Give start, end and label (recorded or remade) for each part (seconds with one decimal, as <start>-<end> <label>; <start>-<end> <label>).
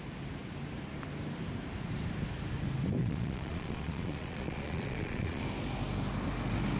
0.0-3.0 recorded; 3.0-5.4 remade; 5.4-6.8 recorded